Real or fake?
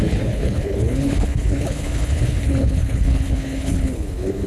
fake